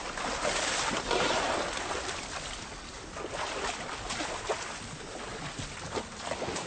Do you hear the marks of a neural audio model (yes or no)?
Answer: yes